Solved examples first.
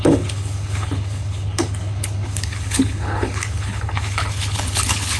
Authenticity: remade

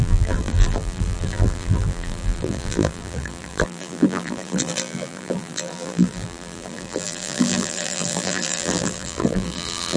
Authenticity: remade